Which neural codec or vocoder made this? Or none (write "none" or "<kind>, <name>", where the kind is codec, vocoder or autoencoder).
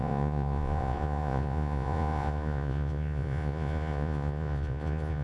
vocoder, Vocos